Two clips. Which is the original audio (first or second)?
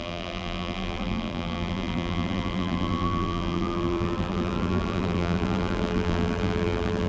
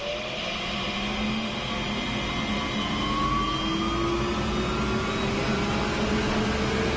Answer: second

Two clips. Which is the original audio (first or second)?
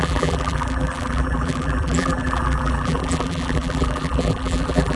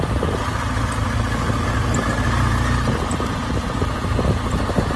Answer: second